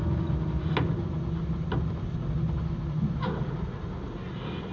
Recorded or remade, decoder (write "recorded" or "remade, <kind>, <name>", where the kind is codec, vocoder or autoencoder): recorded